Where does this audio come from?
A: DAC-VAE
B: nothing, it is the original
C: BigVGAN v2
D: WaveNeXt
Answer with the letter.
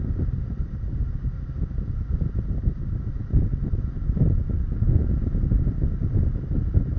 B